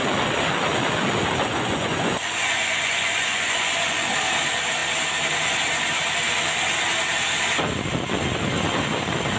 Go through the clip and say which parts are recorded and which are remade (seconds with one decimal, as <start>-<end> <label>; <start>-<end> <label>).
0.0-1.4 recorded; 1.4-4.1 remade; 4.1-9.4 recorded

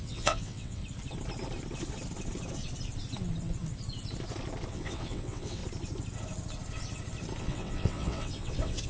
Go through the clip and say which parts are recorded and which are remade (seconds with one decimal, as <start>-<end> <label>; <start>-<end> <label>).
0.0-0.8 remade; 0.8-4.7 recorded; 4.7-5.6 remade; 5.6-7.4 recorded; 7.4-8.9 remade

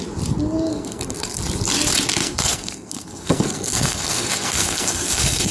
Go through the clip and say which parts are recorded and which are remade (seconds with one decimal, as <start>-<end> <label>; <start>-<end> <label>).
0.0-0.7 recorded; 0.7-1.4 remade; 1.4-2.2 recorded; 2.2-5.5 remade

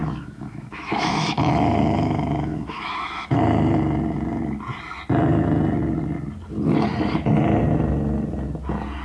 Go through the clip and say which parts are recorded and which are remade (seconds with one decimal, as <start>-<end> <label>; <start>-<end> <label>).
0.0-3.4 remade; 3.4-9.0 recorded

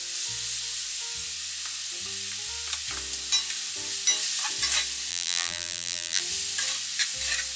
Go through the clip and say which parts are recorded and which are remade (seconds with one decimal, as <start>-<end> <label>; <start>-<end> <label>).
0.0-5.1 recorded; 5.1-6.2 remade; 6.2-7.6 recorded

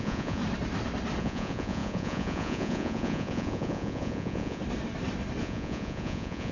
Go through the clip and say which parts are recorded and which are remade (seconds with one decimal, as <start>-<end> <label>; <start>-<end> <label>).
0.0-0.4 remade; 0.4-1.2 recorded; 1.2-4.6 remade; 4.6-5.4 recorded; 5.4-6.5 remade

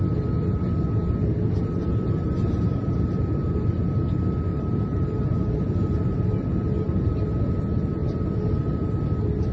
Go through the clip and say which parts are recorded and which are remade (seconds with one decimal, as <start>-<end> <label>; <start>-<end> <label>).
0.0-1.8 recorded; 1.8-2.9 remade; 2.9-4.5 recorded; 4.5-7.1 remade; 7.1-9.5 recorded